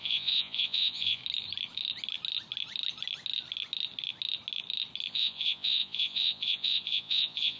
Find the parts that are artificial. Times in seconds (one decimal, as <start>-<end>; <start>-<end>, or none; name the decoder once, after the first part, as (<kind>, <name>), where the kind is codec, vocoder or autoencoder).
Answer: 0.0-1.2 (vocoder, Vocos); 5.1-7.6